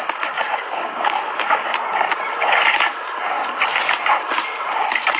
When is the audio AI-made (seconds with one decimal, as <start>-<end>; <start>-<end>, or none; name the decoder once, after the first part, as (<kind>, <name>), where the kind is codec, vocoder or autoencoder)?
0.0-1.7 (codec, DAC); 4.8-5.2